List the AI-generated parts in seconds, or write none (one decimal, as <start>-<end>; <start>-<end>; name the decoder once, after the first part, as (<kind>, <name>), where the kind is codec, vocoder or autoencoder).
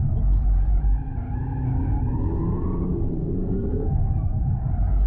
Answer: 0.0-1.4 (vocoder, BigVGAN v2); 2.4-5.1